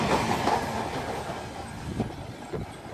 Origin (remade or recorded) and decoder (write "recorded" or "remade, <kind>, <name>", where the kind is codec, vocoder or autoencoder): recorded